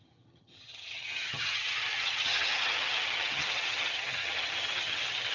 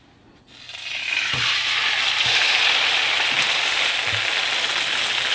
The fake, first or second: first